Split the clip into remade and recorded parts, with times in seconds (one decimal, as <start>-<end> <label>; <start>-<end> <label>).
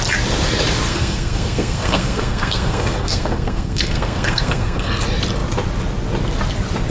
0.0-0.9 recorded; 0.9-5.0 remade; 5.0-6.9 recorded